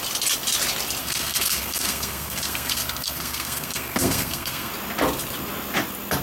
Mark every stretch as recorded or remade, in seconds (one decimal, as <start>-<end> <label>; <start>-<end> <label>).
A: 0.0-1.0 recorded; 1.0-4.7 remade; 4.7-6.2 recorded